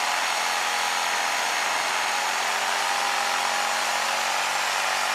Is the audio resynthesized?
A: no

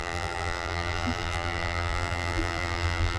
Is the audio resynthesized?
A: yes